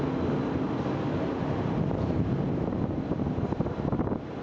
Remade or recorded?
recorded